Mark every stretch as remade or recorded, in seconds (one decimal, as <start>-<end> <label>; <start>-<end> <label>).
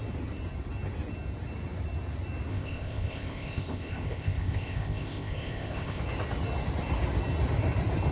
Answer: 0.0-2.5 recorded; 2.5-6.0 remade; 6.0-8.1 recorded